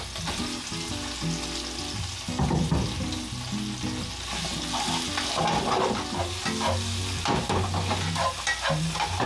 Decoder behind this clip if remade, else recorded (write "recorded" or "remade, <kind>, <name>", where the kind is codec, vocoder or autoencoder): recorded